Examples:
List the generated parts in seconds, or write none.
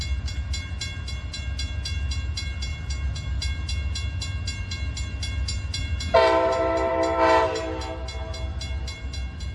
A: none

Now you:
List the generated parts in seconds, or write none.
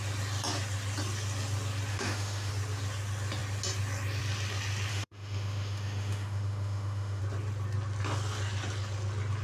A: 1.9-2.5 (autoencoder, DAC-VAE); 4.9-7.2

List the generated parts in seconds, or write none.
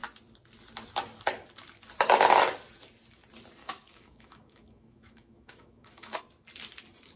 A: 3.6-6.2 (autoencoder, DAC-VAE)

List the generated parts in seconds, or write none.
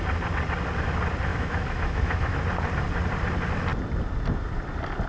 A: 1.3-2.4 (autoencoder, DAC-VAE)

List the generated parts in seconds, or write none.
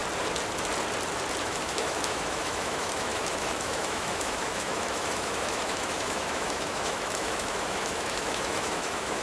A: 1.4-9.2 (autoencoder, DAC-VAE)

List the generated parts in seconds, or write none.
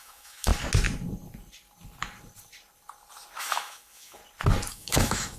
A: 0.0-0.5 (autoencoder, DAC-VAE); 3.4-4.2; 4.7-5.4